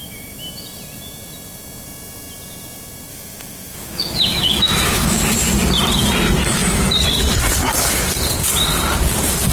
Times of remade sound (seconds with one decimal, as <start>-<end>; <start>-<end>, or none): 3.1-5.2